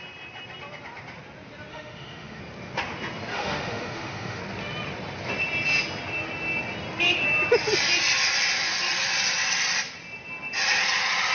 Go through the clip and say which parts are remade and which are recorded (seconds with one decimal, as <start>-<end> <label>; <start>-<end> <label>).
0.0-1.7 recorded; 1.7-2.4 remade; 2.4-3.3 recorded; 3.3-4.4 remade; 4.4-11.3 recorded